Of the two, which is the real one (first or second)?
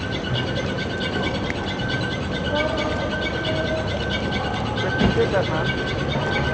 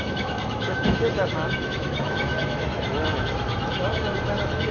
first